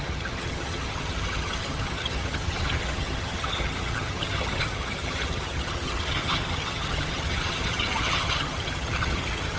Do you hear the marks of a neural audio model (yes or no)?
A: yes